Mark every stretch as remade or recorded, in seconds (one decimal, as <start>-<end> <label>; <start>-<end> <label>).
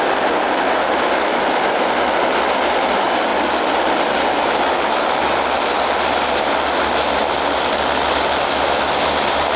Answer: 0.0-9.6 recorded